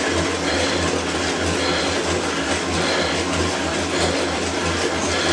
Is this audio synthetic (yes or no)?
no